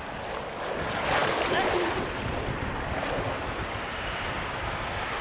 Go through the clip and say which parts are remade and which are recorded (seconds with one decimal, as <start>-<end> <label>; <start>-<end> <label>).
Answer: 0.0-5.2 recorded